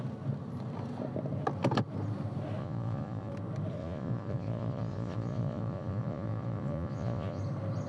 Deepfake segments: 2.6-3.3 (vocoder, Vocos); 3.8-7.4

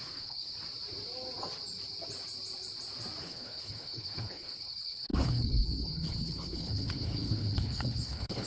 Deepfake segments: 0.0-0.5 (codec, HILCodec); 3.2-8.5

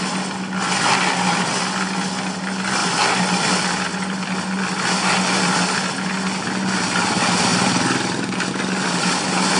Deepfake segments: none

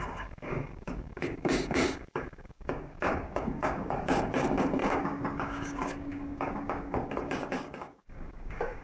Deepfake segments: 0.0-8.8 (codec, DAC)

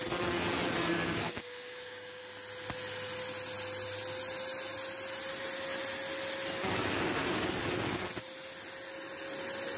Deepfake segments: 0.9-2.2 (codec, DAC)

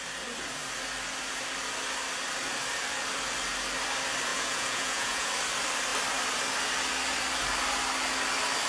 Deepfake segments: 4.3-5.3 (vocoder, Vocos)

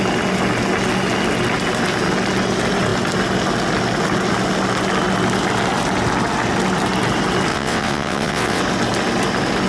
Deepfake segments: 7.5-8.6 (vocoder, WaveNeXt)